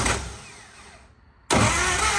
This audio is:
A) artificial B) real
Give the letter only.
B